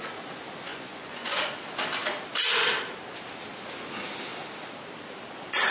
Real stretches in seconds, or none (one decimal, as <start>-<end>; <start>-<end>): 0.0-0.7; 1.5-5.7